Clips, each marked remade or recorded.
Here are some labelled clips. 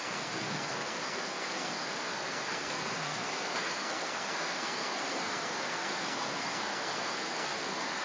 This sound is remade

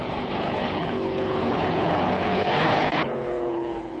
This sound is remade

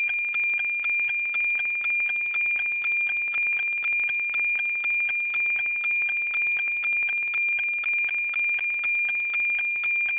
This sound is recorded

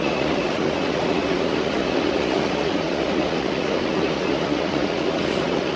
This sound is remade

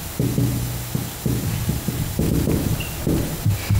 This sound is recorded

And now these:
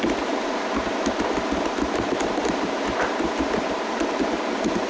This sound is recorded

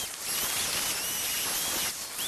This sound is recorded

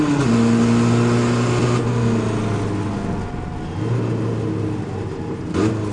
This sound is recorded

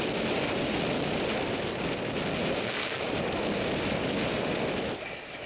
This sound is recorded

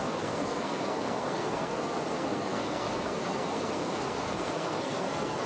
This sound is remade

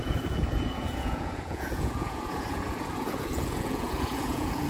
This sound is remade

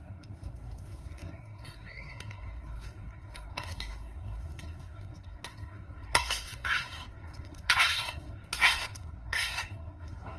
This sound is remade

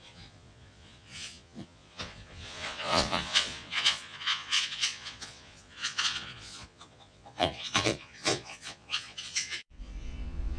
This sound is remade